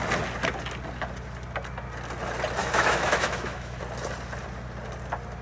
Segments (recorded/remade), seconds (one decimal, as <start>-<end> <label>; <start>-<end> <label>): 0.0-2.6 recorded; 2.6-3.8 remade; 3.8-5.4 recorded